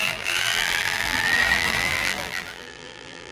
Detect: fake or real fake